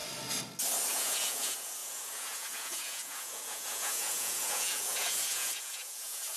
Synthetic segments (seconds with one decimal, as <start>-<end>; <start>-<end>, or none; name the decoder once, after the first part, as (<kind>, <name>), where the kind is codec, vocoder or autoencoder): 0.9-6.4 (vocoder, Vocos)